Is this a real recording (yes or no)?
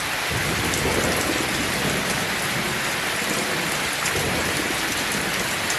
yes